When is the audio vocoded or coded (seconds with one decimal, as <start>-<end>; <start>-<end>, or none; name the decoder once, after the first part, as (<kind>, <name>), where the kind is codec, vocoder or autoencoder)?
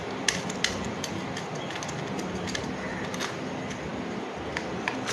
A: none